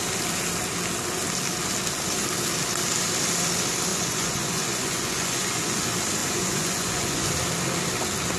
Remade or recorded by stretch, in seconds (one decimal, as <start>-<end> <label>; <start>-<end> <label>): 0.0-3.9 recorded; 3.9-5.8 remade; 5.8-6.2 recorded; 6.2-7.3 remade; 7.3-8.4 recorded